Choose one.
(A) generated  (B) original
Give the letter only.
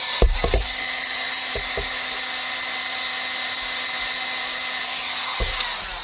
B